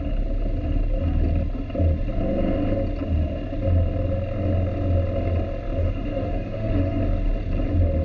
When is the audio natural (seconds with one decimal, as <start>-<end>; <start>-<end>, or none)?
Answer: 0.0-5.8; 7.0-8.0